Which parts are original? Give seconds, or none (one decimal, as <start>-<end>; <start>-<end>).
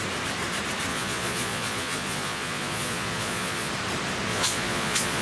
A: 0.0-0.9; 3.7-4.3